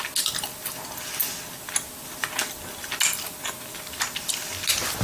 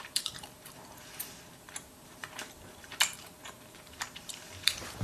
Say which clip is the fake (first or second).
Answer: second